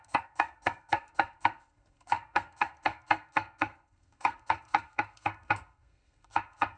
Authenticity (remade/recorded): remade